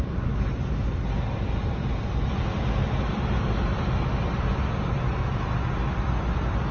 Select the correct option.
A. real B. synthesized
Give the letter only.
A